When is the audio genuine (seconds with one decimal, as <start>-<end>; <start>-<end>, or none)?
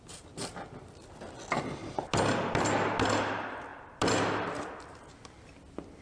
0.0-6.0